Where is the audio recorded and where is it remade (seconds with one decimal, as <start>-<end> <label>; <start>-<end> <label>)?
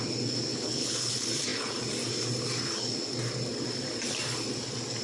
0.0-0.5 recorded; 0.5-1.1 remade; 1.1-5.0 recorded